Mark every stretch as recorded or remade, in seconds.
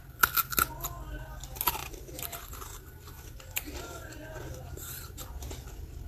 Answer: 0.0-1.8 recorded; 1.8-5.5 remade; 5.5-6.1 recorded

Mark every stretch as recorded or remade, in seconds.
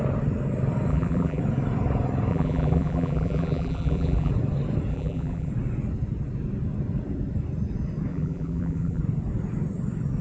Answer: 0.0-0.9 recorded; 0.9-1.4 remade; 1.4-2.3 recorded; 2.3-4.3 remade; 4.3-4.9 recorded; 4.9-5.5 remade; 5.5-8.1 recorded; 8.1-9.0 remade; 9.0-10.2 recorded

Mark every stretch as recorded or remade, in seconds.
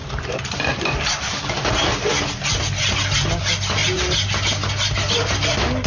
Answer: 0.0-1.4 remade; 1.4-3.8 recorded; 3.8-4.5 remade; 4.5-5.9 recorded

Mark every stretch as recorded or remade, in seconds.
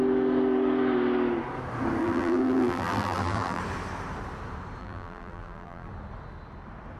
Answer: 0.0-2.0 recorded; 2.0-3.6 remade; 3.6-4.8 recorded; 4.8-5.9 remade; 5.9-7.0 recorded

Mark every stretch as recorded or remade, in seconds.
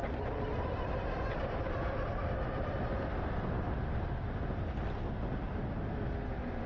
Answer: 0.0-6.7 recorded